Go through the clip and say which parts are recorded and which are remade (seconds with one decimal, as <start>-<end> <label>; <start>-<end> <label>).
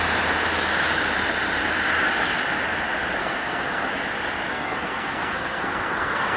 0.0-3.2 recorded; 3.2-3.9 remade; 3.9-4.5 recorded; 4.5-6.4 remade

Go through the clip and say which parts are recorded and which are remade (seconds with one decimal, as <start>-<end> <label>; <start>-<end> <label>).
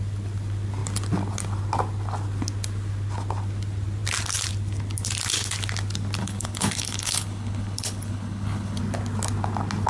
0.0-6.2 recorded; 6.2-8.8 remade; 8.8-9.9 recorded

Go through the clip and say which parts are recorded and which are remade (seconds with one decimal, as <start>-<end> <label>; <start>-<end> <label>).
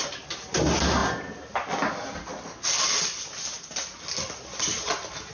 0.0-5.3 recorded